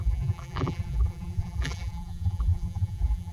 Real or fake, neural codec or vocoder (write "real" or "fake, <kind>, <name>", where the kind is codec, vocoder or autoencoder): fake, vocoder, BigVGAN v2